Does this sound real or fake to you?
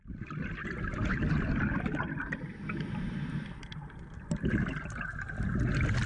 real